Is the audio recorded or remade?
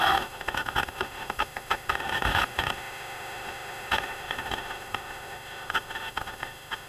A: remade